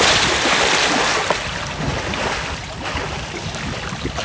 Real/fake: real